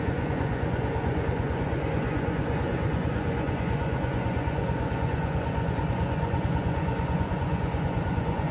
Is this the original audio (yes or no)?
no